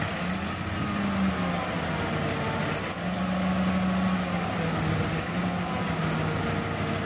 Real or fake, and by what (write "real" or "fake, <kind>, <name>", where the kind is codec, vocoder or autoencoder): real